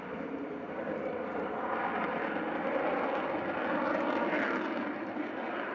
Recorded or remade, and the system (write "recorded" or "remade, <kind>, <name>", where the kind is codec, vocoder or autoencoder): remade, vocoder, BigVGAN v2